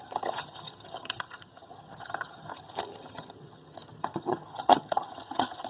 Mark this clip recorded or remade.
remade